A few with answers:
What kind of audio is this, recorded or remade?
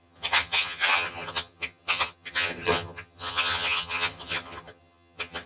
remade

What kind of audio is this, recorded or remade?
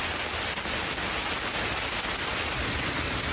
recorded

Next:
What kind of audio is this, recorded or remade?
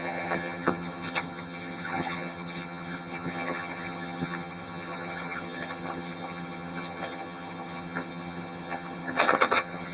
remade